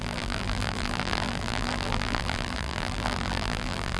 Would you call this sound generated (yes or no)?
yes